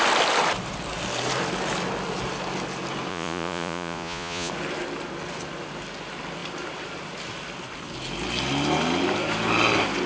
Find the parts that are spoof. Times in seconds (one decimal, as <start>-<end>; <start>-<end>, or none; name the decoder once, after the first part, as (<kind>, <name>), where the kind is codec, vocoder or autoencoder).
3.1-4.5 (vocoder, Vocos)